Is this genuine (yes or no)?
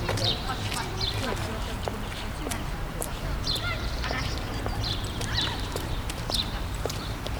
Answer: no